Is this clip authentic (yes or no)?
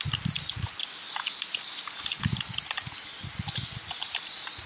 yes